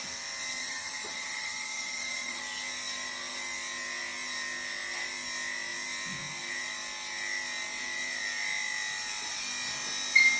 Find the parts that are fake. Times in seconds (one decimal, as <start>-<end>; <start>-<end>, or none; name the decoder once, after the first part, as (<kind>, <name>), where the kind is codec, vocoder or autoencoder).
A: 0.6-2.4 (vocoder, HiFi-GAN)